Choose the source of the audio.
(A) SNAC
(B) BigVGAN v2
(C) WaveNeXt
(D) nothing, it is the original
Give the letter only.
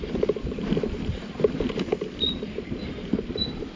B